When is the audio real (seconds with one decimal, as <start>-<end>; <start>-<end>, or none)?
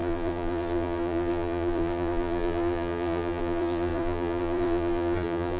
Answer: none